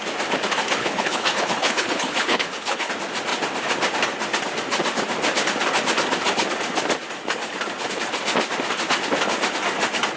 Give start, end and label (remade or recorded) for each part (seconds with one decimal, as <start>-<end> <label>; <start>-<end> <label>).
0.0-0.8 recorded; 0.8-2.9 remade; 2.9-10.2 recorded